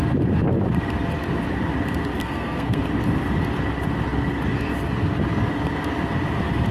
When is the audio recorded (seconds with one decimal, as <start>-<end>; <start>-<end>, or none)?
0.0-2.2; 2.8-6.7